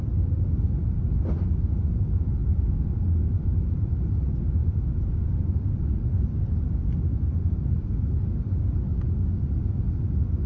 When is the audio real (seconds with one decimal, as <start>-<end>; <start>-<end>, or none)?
0.0-2.4; 3.9-4.6; 5.7-8.9; 9.4-10.5